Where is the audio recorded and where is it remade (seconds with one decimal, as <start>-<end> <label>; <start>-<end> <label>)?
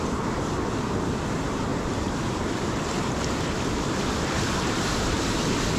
0.0-1.7 recorded; 1.7-5.2 remade; 5.2-5.8 recorded